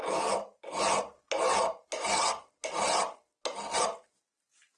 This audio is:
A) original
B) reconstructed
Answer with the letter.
A